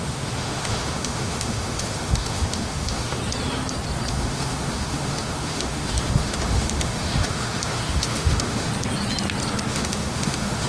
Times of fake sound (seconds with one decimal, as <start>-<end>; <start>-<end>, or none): 0.0-3.2; 4.1-8.7; 9.7-10.7